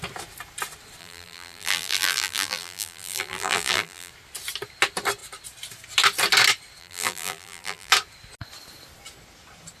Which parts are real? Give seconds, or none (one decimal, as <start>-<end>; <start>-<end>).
0.0-1.0; 4.1-6.8; 7.9-9.8